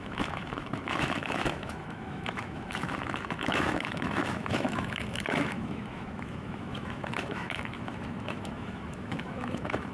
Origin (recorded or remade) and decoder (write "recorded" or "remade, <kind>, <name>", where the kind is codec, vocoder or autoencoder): remade, autoencoder, DAC-VAE